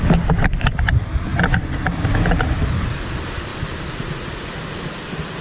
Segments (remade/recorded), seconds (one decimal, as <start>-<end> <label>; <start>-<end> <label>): 0.0-5.4 recorded